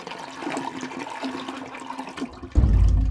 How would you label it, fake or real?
real